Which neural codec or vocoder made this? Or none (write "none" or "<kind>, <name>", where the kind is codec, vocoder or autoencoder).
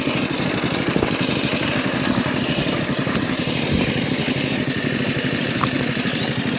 vocoder, BigVGAN v2